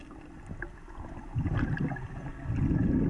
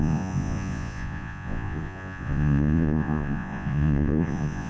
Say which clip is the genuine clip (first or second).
first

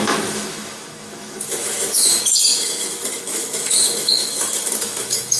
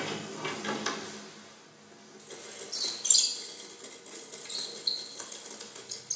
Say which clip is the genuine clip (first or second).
second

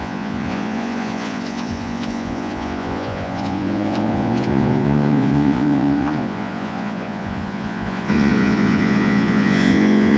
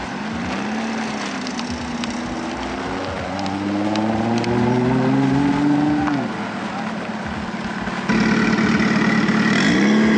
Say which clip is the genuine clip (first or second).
second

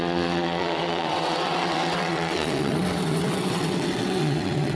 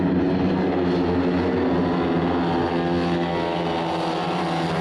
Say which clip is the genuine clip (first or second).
second